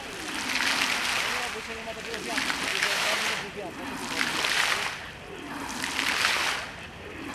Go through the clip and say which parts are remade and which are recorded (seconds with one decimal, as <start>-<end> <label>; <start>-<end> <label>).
0.0-2.7 recorded; 2.7-3.2 remade; 3.2-7.3 recorded